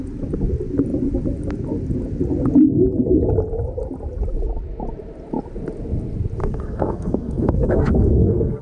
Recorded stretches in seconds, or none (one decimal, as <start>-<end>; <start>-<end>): 0.0-6.4